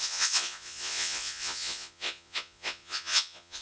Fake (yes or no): yes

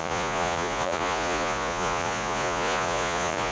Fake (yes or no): yes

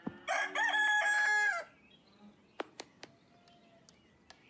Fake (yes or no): no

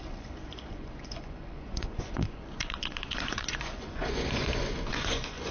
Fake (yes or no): yes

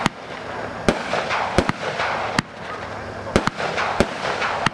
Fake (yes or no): no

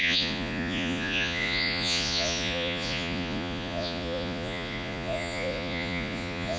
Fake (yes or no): yes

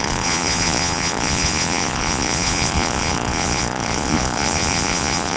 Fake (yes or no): yes